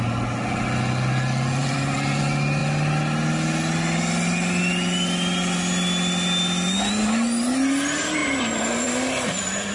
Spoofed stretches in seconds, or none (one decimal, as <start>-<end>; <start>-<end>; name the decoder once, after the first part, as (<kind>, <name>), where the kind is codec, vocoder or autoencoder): 1.6-2.2 (vocoder, BigVGAN v2); 8.2-9.7